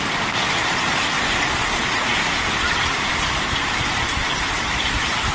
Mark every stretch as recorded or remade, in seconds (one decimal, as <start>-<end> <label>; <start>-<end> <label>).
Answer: 0.0-2.1 recorded; 2.1-5.3 remade